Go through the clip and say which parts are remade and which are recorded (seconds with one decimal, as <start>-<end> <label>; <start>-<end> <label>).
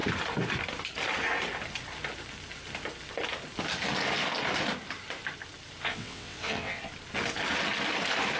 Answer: 0.0-5.9 recorded; 5.9-6.8 remade; 6.8-8.4 recorded